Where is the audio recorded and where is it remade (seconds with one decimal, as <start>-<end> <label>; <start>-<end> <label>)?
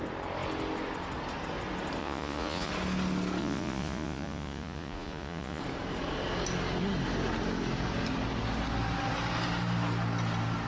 0.0-2.0 recorded; 2.0-2.7 remade; 2.7-3.4 recorded; 3.4-5.6 remade; 5.6-10.7 recorded